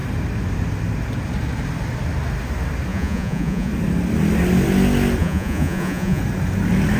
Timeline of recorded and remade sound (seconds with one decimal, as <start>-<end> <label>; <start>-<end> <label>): 0.0-2.9 recorded; 2.9-3.7 remade; 3.7-5.2 recorded; 5.2-6.2 remade; 6.2-7.0 recorded